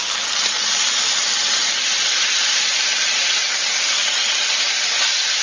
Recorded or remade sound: recorded